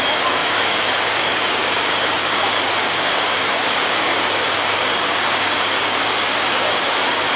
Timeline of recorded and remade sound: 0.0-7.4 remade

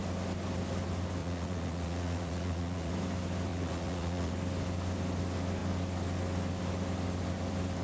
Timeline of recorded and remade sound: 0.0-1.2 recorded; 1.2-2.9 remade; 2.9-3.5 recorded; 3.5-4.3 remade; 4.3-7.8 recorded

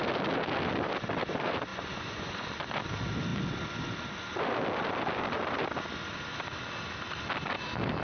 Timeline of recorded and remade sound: 0.0-1.7 recorded; 1.7-2.5 remade; 2.5-8.0 recorded

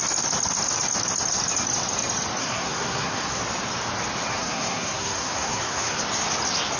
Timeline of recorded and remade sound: 0.0-2.4 recorded; 2.4-3.4 remade; 3.4-4.3 recorded; 4.3-6.0 remade; 6.0-6.8 recorded

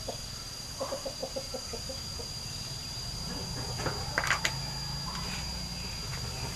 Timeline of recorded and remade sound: 0.0-6.6 recorded

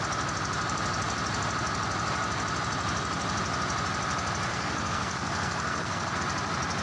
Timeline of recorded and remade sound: 0.0-4.5 recorded; 4.5-6.2 remade; 6.2-6.8 recorded

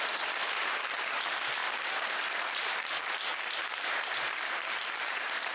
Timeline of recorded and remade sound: 0.0-5.5 remade

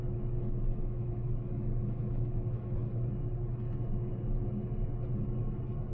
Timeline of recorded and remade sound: 0.0-2.8 remade; 2.8-5.9 recorded